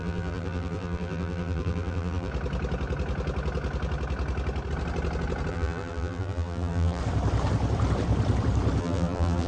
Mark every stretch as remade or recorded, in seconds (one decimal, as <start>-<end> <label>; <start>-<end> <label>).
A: 0.0-2.3 remade; 2.3-5.5 recorded; 5.5-7.0 remade; 7.0-8.8 recorded; 8.8-9.5 remade

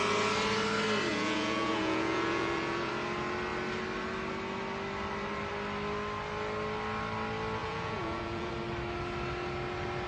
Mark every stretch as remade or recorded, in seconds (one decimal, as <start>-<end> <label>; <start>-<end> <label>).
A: 0.0-1.1 recorded; 1.1-2.9 remade; 2.9-7.6 recorded; 7.6-8.5 remade; 8.5-10.1 recorded

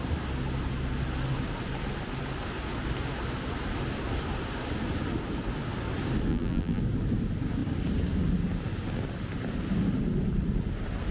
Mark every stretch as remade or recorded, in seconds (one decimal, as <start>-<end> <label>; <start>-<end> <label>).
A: 0.0-6.3 recorded; 6.3-6.8 remade; 6.8-11.1 recorded

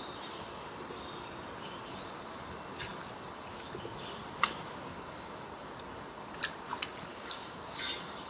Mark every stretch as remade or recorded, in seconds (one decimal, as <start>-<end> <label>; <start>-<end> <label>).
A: 0.0-7.1 recorded; 7.1-7.6 remade; 7.6-8.3 recorded

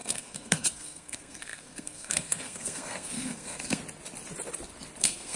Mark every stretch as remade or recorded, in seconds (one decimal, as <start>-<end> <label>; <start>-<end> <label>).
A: 0.0-3.8 remade; 3.8-5.0 recorded; 5.0-5.4 remade

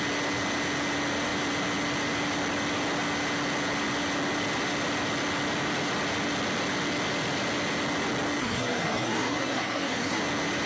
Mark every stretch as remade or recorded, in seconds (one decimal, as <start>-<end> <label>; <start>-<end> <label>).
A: 0.0-8.4 recorded; 8.4-10.2 remade; 10.2-10.7 recorded

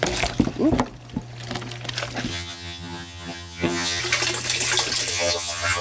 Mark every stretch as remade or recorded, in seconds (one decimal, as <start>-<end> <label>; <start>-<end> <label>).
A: 0.0-2.3 recorded; 2.3-4.0 remade; 4.0-5.1 recorded; 5.1-5.8 remade

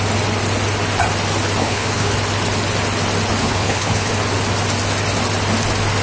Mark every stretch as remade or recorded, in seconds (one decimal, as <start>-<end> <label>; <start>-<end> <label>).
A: 0.0-1.6 recorded; 1.6-2.1 remade; 2.1-3.4 recorded; 3.4-4.1 remade; 4.1-6.0 recorded